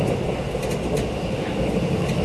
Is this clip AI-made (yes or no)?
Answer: no